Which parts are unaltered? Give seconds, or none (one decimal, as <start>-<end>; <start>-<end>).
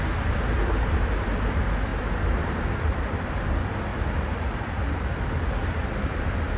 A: 3.9-5.4